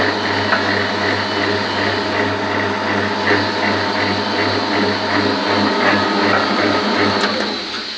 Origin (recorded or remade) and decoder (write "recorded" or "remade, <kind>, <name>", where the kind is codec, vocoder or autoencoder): recorded